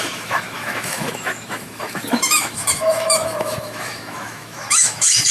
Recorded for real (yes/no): no